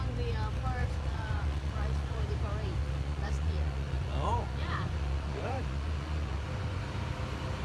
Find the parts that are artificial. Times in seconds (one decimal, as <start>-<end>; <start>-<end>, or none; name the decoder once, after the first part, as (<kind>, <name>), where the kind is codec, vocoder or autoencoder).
0.8-2.2 (vocoder, Vocos); 2.8-6.8